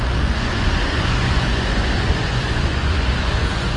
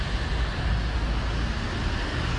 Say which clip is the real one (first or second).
second